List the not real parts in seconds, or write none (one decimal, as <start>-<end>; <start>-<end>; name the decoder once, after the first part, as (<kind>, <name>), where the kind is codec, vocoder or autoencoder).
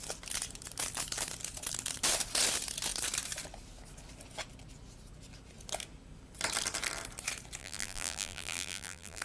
7.6-9.2 (vocoder, BigVGAN v2)